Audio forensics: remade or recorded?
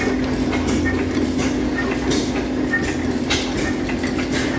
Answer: recorded